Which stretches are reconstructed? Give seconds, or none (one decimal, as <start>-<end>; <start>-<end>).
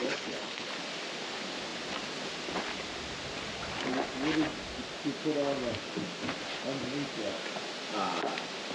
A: 0.0-0.7